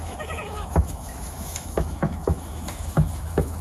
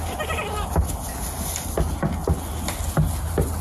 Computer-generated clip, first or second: first